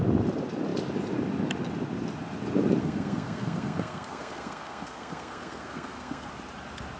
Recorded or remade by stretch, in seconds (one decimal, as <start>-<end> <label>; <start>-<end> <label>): 0.0-2.8 recorded; 2.8-6.3 remade; 6.3-7.0 recorded